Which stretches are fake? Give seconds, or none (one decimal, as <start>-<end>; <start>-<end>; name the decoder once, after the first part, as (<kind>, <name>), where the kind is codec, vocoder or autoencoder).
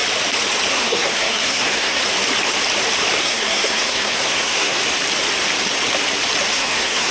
0.7-2.0 (codec, SNAC); 3.2-4.8; 6.5-7.1